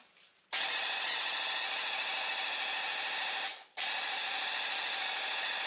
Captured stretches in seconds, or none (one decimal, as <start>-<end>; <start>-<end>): 0.0-5.7

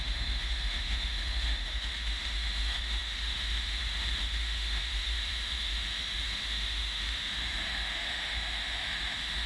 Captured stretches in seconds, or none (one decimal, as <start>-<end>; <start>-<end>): none